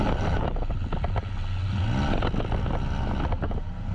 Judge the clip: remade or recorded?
recorded